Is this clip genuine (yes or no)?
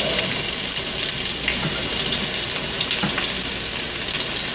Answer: yes